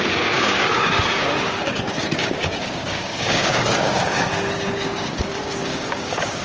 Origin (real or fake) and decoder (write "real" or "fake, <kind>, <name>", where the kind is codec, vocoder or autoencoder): fake, codec, DAC